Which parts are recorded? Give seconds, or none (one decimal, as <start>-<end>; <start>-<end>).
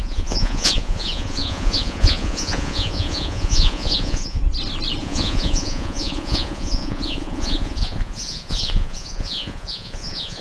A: 4.4-5.0